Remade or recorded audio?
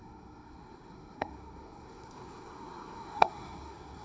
remade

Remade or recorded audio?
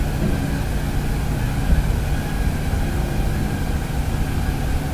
recorded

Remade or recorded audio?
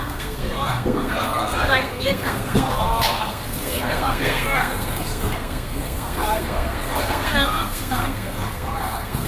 remade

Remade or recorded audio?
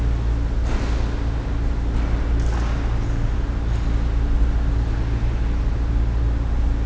recorded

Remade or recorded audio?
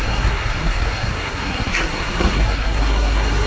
remade